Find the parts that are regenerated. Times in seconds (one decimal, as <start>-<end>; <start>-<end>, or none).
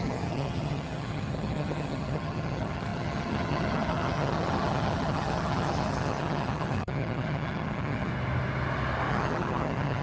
0.0-8.1; 9.1-10.0